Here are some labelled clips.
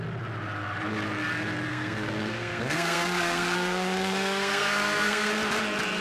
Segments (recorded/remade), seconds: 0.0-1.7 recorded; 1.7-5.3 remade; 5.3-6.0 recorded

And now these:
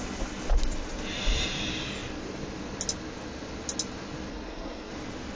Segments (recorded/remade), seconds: 0.0-4.3 recorded; 4.3-4.9 remade; 4.9-5.4 recorded

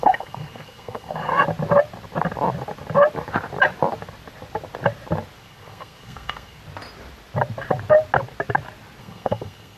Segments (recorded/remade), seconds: 0.0-1.3 remade; 1.3-5.4 recorded; 5.4-6.6 remade; 6.6-9.0 recorded; 9.0-9.8 remade

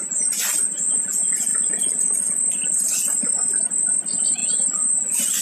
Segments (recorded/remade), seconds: 0.0-5.4 recorded

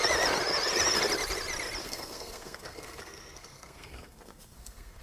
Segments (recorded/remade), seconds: 0.0-1.8 recorded; 1.8-5.0 remade

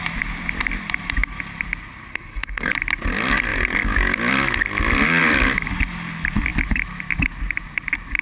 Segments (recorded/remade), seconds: 0.0-2.1 recorded; 2.1-2.7 remade; 2.7-8.2 recorded